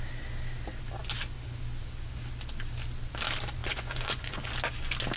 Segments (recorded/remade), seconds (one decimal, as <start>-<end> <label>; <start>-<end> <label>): 0.0-3.6 recorded; 3.6-4.5 remade; 4.5-5.2 recorded